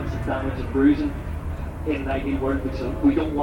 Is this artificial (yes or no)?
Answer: yes